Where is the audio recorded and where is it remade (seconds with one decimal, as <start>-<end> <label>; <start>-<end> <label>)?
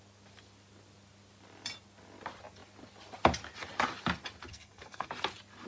0.0-4.5 recorded; 4.5-5.1 remade; 5.1-5.7 recorded